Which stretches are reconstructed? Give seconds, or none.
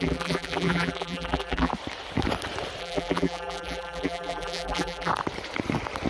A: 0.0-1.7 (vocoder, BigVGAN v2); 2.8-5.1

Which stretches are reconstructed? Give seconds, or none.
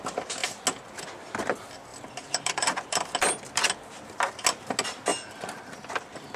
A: 1.9-4.0 (vocoder, BigVGAN v2)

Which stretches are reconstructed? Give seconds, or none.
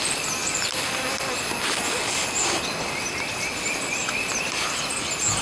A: none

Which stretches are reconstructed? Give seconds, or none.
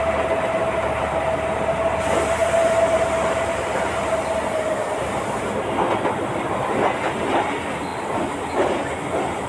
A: 2.4-3.8 (vocoder, BigVGAN v2)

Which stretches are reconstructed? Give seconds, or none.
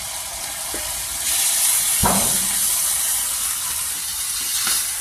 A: none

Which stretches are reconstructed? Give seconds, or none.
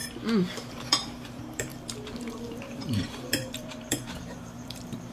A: 0.7-5.1 (vocoder, BigVGAN v2)